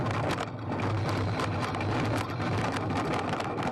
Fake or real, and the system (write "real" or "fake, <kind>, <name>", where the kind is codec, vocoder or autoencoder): real